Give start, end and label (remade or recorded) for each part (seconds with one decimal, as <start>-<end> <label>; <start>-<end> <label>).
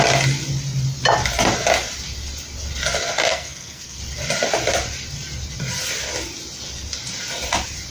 0.0-3.3 recorded; 3.3-4.0 remade; 4.0-7.9 recorded